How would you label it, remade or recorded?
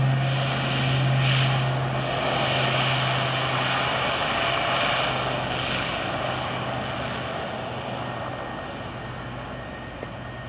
recorded